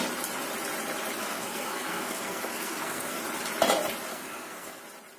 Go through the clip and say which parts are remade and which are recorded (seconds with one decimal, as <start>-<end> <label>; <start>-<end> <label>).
0.0-1.2 recorded; 1.2-3.2 remade; 3.2-4.1 recorded; 4.1-4.8 remade; 4.8-5.2 recorded